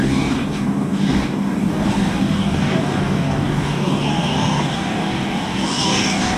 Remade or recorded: remade